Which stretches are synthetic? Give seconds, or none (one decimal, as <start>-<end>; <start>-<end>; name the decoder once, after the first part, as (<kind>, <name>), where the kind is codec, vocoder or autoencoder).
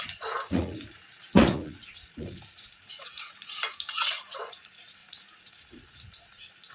0.0-6.7 (vocoder, Vocos)